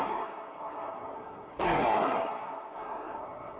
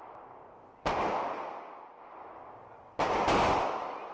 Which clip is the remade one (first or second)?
first